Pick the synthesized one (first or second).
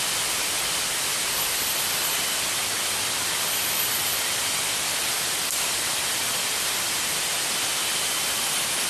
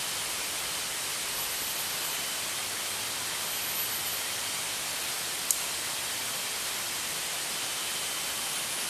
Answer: first